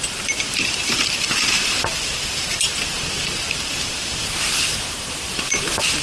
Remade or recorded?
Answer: remade